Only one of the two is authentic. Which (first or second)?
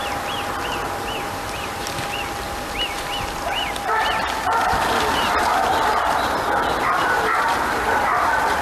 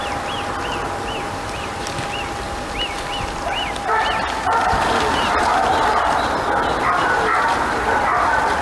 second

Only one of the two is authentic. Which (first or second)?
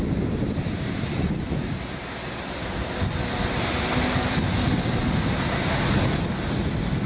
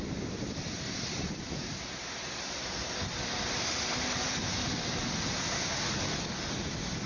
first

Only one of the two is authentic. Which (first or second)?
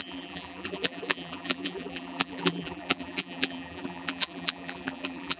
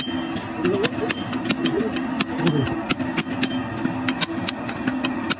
second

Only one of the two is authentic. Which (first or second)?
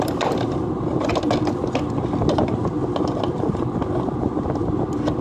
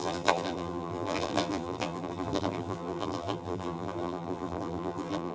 first